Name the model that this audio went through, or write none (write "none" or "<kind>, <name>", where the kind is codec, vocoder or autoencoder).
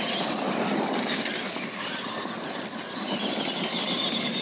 none